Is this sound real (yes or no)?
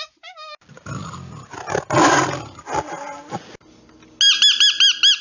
yes